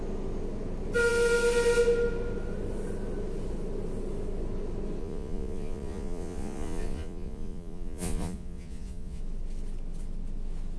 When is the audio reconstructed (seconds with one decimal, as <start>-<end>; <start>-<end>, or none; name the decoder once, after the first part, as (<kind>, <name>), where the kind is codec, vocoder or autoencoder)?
5.0-9.2 (vocoder, Vocos)